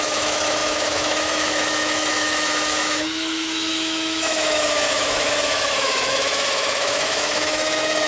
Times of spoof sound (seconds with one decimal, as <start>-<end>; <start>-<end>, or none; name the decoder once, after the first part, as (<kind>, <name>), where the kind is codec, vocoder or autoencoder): 0.0-8.1 (autoencoder, DAC-VAE)